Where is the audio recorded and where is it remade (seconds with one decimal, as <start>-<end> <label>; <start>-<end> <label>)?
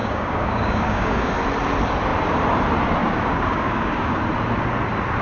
0.0-1.3 remade; 1.3-3.0 recorded; 3.0-4.2 remade; 4.2-5.2 recorded